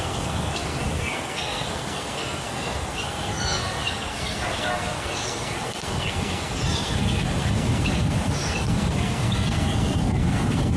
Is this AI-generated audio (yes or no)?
yes